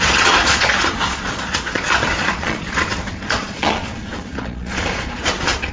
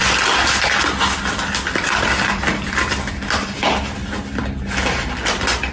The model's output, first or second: first